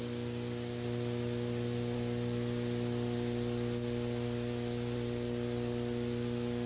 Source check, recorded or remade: recorded